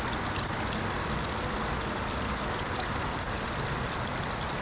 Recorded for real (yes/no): yes